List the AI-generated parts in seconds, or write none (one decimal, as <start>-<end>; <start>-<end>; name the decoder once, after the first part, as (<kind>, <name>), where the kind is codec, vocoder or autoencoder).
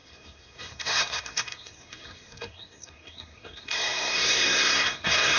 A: 0.0-5.4 (codec, SNAC)